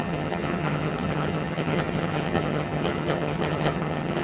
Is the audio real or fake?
fake